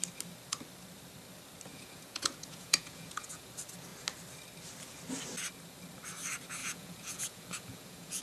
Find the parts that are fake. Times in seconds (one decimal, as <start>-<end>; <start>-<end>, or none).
1.7-3.5; 6.6-8.2